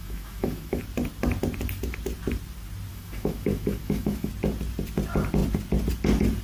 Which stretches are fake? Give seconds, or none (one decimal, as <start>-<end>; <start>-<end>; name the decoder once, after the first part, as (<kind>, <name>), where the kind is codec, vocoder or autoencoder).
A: 0.0-0.8 (autoencoder, DAC-VAE); 2.9-4.3